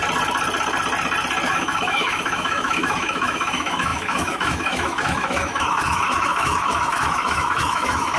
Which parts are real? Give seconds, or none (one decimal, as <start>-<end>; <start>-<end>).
0.0-1.5